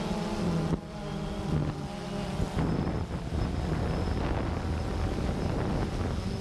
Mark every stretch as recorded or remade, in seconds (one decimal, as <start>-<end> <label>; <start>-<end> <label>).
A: 0.0-6.4 recorded